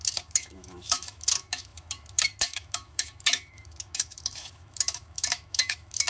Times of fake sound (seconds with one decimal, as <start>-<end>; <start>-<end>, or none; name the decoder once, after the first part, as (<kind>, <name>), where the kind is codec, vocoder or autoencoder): 0.0-6.1 (autoencoder, DAC-VAE)